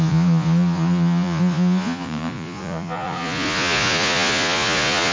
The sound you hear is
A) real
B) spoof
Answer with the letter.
B